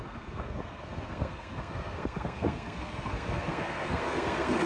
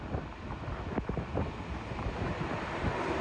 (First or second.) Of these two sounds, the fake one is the first